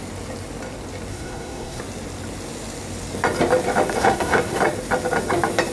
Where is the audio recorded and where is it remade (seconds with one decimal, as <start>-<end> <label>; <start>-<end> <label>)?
0.0-1.1 recorded; 1.1-1.8 remade; 1.8-4.0 recorded; 4.0-4.6 remade; 4.6-5.7 recorded